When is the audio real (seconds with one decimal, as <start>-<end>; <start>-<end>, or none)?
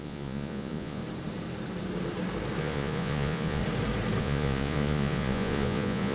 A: 1.0-2.6; 3.6-4.2